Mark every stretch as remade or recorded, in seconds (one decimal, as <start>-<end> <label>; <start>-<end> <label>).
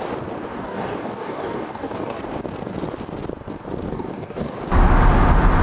0.0-0.5 recorded; 0.5-2.2 remade; 2.2-3.9 recorded; 3.9-4.6 remade; 4.6-5.6 recorded